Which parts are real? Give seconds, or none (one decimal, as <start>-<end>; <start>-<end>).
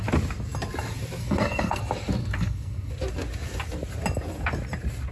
0.0-1.2; 1.8-2.2; 2.9-5.1